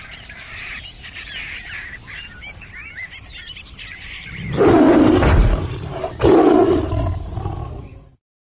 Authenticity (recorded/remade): remade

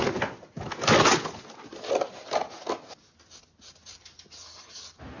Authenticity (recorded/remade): recorded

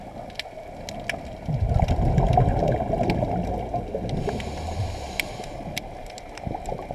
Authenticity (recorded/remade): recorded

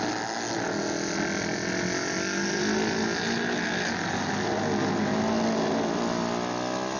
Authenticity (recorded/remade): recorded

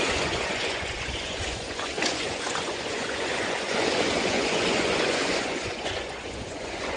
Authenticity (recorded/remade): remade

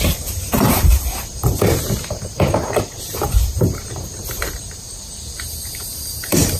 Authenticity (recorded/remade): remade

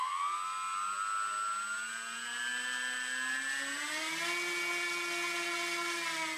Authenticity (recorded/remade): recorded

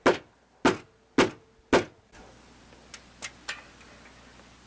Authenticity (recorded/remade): recorded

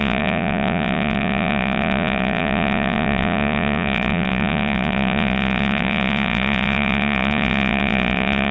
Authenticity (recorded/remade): remade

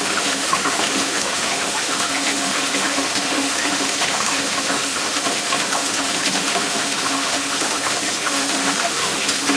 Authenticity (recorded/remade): remade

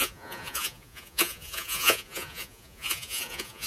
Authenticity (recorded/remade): remade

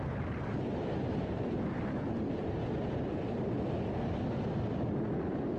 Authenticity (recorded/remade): recorded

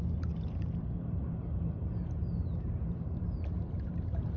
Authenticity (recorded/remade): remade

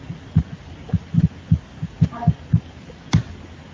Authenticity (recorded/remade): recorded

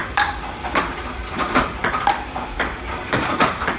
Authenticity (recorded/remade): remade